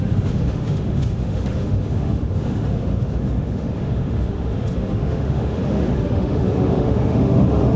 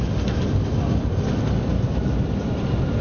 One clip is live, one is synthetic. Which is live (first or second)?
second